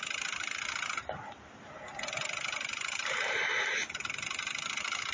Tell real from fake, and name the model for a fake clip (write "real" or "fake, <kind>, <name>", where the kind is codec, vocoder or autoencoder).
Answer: real